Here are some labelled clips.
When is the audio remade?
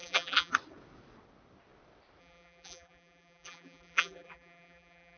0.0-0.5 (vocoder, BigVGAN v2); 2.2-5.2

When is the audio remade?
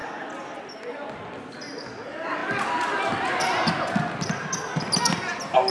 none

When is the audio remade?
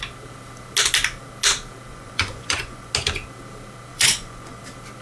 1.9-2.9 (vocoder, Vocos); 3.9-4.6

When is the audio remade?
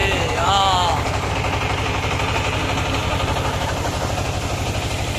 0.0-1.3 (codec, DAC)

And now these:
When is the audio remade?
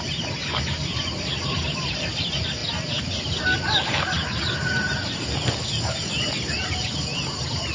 none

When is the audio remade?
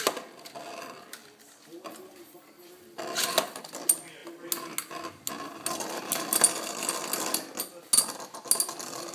none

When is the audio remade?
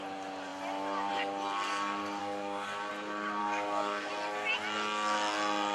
2.2-2.9 (codec, DAC); 3.4-4.1